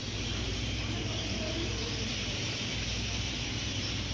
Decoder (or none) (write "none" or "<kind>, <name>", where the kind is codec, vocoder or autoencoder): vocoder, BigVGAN v2